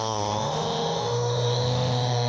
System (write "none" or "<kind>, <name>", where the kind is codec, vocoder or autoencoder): autoencoder, DAC-VAE